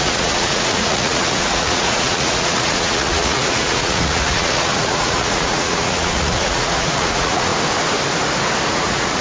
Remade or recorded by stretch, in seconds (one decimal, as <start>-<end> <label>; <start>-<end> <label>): 0.0-7.5 remade; 7.5-8.7 recorded; 8.7-9.2 remade